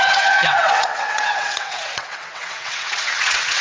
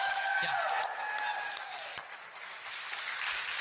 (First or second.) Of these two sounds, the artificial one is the first